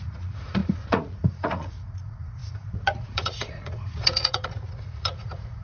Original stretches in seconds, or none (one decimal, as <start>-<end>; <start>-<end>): none